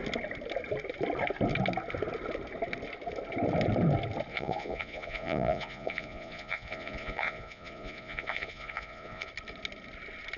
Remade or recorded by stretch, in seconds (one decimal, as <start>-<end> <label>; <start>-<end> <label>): 0.0-4.3 recorded; 4.3-9.3 remade; 9.3-10.4 recorded